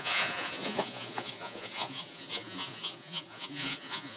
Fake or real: fake